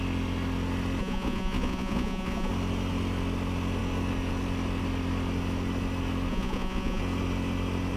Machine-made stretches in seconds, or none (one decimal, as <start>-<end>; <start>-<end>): 1.0-2.5; 6.3-7.0